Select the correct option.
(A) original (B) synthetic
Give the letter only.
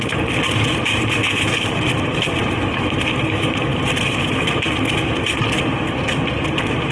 A